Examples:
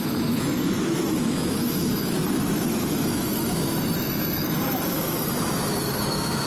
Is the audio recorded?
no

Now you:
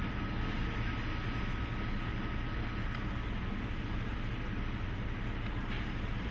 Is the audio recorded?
yes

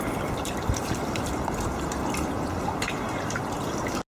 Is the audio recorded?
yes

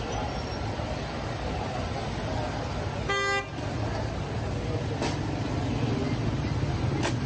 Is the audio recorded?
yes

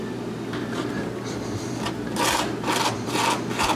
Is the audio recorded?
yes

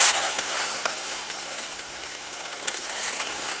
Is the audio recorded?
no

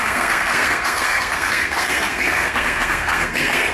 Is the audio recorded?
no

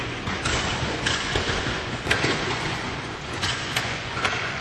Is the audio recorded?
no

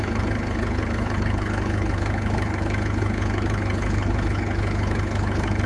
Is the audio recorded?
no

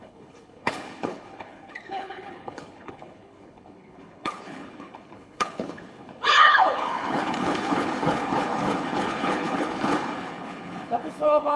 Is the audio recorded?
no